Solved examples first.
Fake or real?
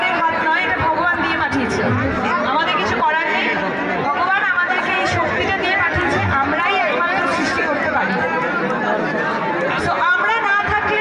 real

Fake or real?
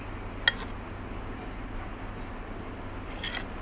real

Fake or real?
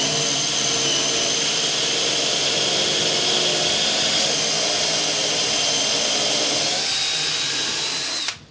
real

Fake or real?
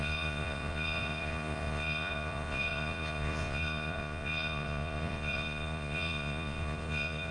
fake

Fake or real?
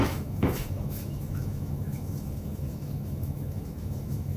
fake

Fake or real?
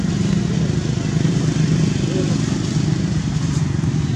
real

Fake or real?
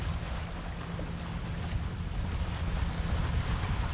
real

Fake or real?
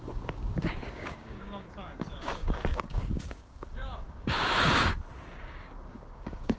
fake